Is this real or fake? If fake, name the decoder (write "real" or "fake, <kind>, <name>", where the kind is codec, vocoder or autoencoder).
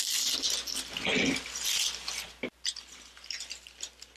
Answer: real